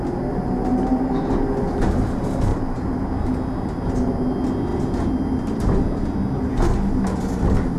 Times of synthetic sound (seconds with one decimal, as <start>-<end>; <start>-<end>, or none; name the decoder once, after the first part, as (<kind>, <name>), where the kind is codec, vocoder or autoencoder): 0.7-1.3 (vocoder, BigVGAN v2); 2.5-3.1

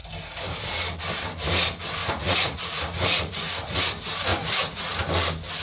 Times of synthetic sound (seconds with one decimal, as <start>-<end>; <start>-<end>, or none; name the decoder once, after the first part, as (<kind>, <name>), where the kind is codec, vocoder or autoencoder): 2.0-3.8 (vocoder, Vocos); 4.3-4.9

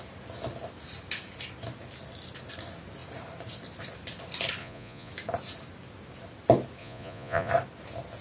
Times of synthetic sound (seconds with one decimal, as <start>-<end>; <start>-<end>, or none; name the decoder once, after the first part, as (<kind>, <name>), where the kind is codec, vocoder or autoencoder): 4.6-5.1 (vocoder, Vocos); 6.8-7.5